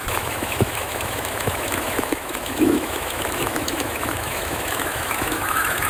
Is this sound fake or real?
fake